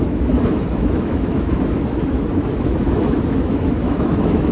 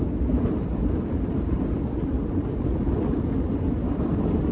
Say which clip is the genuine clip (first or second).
second